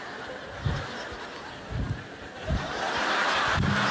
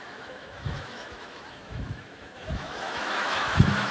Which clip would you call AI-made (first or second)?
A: second